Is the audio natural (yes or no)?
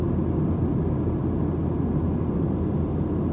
yes